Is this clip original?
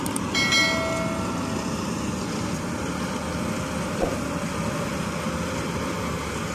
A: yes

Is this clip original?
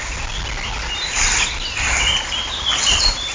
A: yes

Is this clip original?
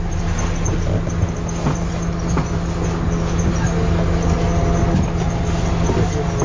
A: yes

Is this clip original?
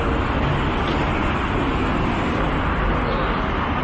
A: yes